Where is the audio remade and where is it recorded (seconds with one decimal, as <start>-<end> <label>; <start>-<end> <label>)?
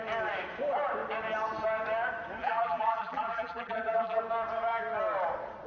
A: 0.0-2.4 recorded; 2.4-4.2 remade; 4.2-5.7 recorded